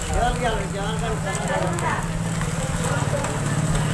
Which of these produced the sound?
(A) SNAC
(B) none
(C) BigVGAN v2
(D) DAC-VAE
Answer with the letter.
B